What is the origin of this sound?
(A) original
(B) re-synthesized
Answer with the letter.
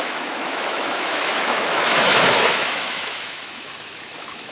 B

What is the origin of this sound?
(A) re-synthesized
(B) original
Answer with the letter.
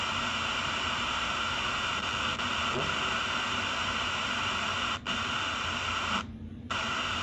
B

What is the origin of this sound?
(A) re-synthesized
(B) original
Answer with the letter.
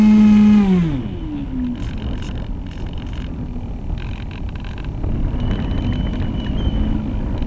B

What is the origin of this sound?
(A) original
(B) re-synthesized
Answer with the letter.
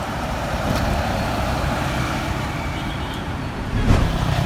B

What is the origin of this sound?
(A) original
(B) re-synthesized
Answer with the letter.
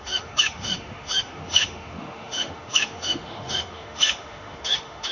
B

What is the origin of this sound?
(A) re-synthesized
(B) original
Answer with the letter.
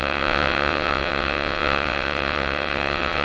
A